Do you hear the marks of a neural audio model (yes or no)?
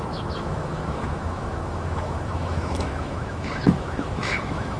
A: yes